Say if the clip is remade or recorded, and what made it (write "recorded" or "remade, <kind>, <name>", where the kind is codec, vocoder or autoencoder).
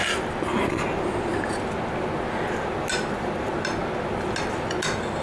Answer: recorded